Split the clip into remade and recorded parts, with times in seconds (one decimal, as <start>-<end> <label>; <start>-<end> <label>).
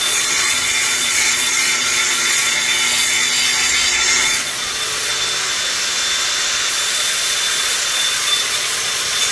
0.0-5.1 remade; 5.1-6.7 recorded; 6.7-9.3 remade